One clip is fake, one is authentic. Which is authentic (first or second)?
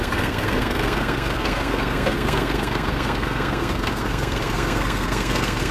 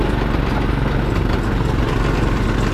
second